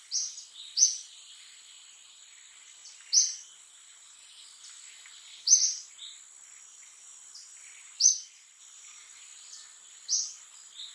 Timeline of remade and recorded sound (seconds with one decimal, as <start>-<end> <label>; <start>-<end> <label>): 0.0-10.9 recorded